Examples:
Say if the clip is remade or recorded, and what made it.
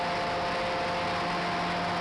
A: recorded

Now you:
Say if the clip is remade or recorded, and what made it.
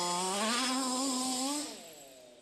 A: recorded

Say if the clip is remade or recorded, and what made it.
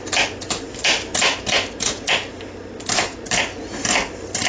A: recorded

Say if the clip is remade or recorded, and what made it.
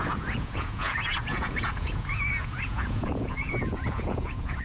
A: remade, vocoder, Vocos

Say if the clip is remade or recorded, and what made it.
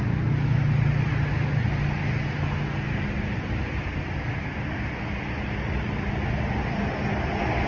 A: recorded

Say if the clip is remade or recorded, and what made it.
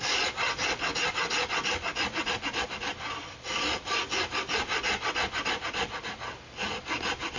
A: recorded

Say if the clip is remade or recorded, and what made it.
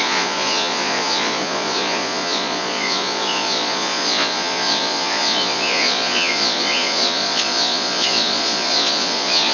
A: remade, vocoder, Vocos